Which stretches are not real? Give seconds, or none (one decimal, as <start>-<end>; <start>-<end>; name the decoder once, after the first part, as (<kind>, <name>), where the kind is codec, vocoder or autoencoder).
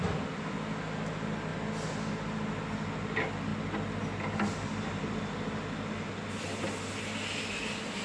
none